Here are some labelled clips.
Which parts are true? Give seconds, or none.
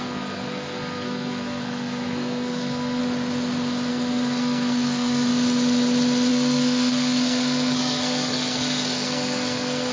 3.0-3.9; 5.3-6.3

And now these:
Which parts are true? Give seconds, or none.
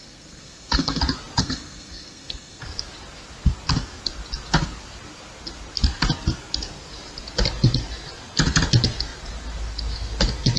1.0-1.4; 2.6-10.6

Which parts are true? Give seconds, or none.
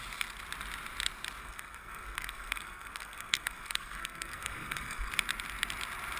0.0-1.4; 5.1-6.2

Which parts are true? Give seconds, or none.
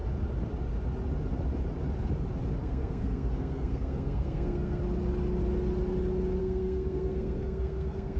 0.0-2.6; 4.8-6.4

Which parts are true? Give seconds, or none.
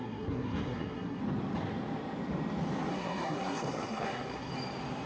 1.2-2.9; 4.5-5.1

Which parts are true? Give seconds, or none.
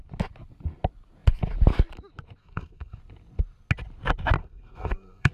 0.0-2.4; 3.0-4.4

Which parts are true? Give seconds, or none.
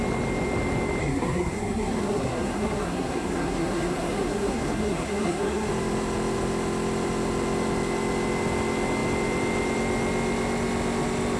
0.0-1.0; 5.7-11.4